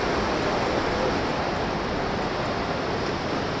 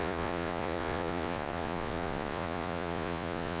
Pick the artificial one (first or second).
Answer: second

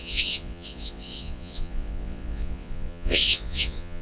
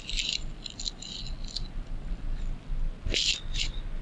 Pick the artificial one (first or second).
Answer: first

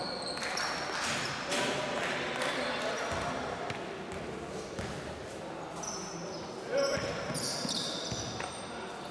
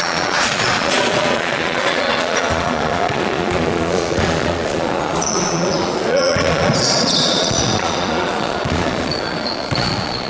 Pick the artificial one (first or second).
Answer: second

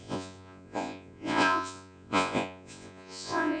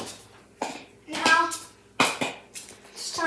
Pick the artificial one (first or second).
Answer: first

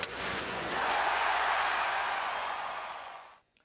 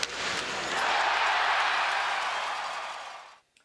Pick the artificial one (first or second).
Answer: first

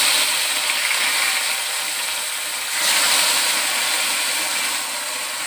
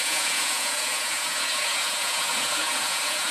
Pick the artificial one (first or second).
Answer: second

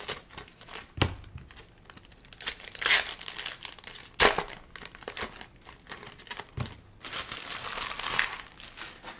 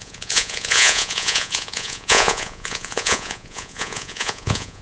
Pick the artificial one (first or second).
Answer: second